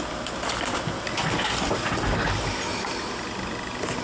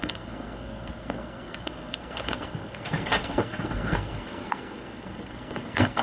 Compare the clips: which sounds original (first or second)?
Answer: first